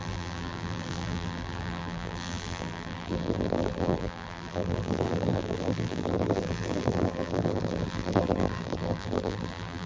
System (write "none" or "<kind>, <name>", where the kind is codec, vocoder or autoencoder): vocoder, BigVGAN v2